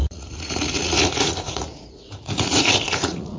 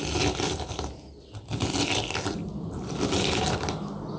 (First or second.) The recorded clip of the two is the second